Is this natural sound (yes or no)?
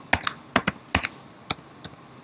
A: yes